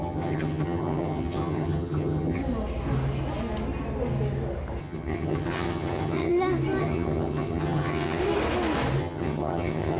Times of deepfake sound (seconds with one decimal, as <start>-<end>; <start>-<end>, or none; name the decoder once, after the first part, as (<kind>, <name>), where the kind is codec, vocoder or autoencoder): 0.0-2.4 (vocoder, HiFi-GAN); 4.8-6.3; 6.8-8.2; 9.0-10.0